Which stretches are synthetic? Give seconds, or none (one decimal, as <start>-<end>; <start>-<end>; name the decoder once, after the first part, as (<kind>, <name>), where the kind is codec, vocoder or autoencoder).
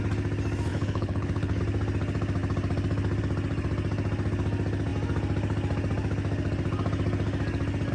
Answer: 0.7-1.6 (codec, HILCodec)